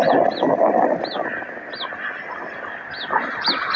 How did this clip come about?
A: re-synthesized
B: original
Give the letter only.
B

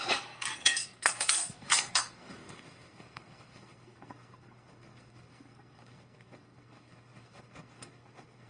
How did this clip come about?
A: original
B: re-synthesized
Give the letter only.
B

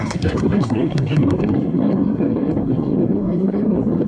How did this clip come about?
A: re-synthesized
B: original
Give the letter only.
A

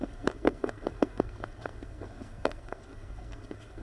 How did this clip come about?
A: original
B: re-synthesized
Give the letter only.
B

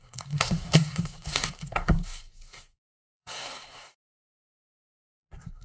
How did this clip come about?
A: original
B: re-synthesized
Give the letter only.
B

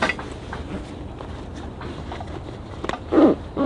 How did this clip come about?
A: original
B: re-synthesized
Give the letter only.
A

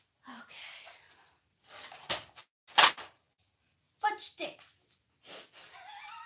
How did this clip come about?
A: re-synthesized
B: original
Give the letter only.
B